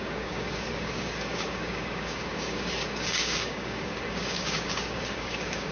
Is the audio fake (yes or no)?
yes